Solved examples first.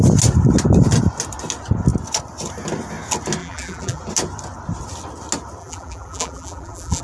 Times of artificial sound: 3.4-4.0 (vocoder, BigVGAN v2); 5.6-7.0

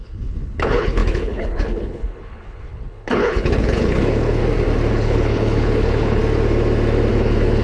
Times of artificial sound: 0.0-4.4 (codec, HILCodec); 4.9-6.2; 7.1-7.6

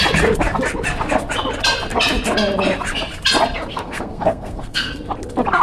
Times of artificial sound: 3.7-4.9 (codec, SNAC)